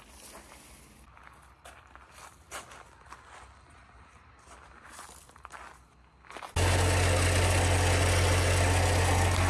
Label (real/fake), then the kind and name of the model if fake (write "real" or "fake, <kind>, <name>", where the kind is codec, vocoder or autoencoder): real